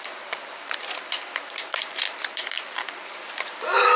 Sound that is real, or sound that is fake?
fake